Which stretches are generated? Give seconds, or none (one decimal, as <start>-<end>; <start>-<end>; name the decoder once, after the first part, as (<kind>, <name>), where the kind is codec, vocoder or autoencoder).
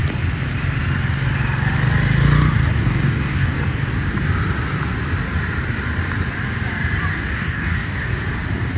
2.8-3.9 (codec, DAC); 7.1-8.1